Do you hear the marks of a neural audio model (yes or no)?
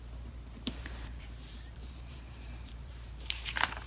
yes